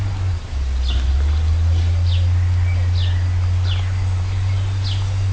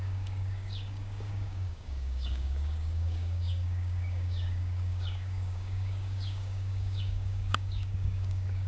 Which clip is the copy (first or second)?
second